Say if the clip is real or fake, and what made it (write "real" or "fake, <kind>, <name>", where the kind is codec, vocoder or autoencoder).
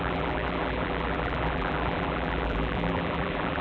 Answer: fake, vocoder, BigVGAN v2